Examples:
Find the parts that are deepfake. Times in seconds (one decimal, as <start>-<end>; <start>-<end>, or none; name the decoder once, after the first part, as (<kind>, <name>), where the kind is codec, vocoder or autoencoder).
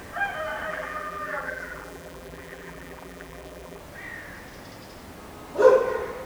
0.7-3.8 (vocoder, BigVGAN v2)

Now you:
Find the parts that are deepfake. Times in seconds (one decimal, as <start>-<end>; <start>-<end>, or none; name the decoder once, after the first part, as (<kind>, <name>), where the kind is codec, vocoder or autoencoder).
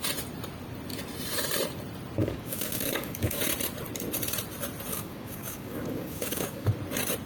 2.2-3.4 (codec, DAC); 4.9-6.7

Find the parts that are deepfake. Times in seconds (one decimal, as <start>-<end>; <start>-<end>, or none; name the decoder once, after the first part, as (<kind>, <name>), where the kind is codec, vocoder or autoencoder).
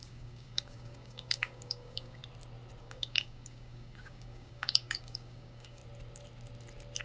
0.0-2.2 (codec, DAC); 2.8-5.8